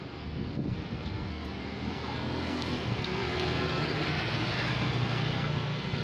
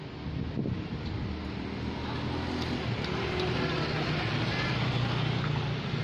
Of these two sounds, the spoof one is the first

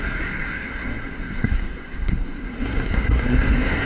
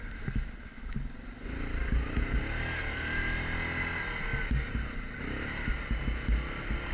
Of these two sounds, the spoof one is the first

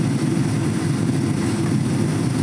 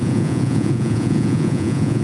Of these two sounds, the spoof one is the second